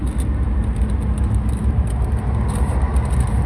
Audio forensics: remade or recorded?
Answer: recorded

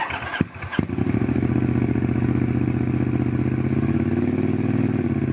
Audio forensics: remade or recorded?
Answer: recorded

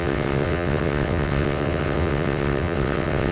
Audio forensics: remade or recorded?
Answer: remade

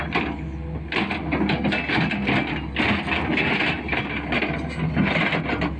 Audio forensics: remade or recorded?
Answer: recorded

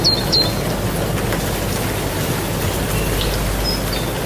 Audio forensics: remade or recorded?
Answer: recorded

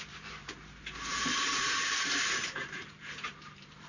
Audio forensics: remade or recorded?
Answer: remade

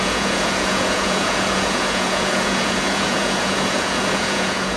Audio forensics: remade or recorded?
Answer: remade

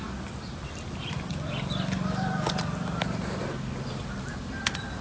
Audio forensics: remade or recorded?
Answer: recorded